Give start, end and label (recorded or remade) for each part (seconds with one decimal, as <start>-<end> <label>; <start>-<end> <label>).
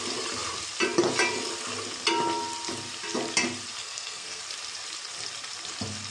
0.0-3.8 recorded; 3.8-4.4 remade; 4.4-6.1 recorded